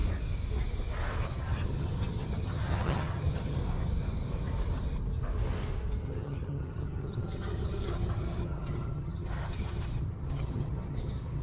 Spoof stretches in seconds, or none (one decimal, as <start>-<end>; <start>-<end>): 1.2-3.6; 6.0-11.4